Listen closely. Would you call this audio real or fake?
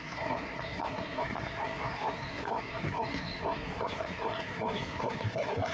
fake